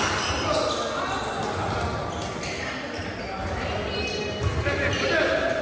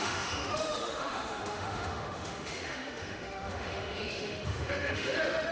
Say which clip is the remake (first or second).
second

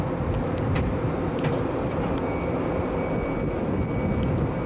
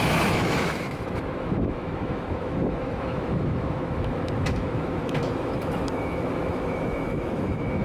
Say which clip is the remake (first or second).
second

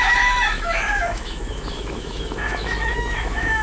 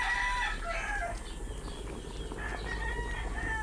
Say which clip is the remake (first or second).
first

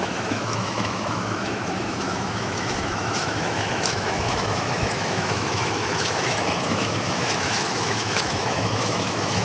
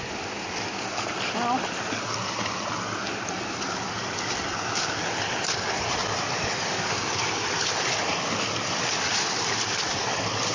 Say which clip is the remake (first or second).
first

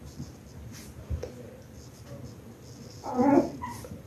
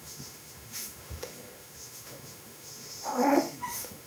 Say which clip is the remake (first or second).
second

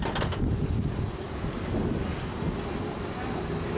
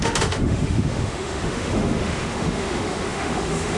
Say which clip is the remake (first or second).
second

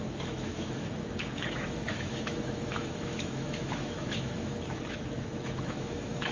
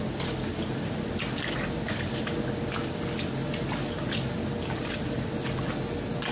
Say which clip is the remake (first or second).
first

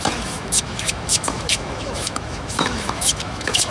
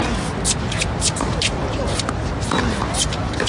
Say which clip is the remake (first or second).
first